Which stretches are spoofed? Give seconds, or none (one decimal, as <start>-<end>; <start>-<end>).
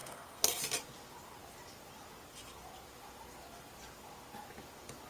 0.0-0.6